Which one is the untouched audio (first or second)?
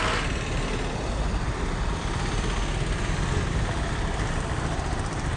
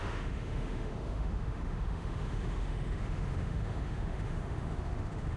first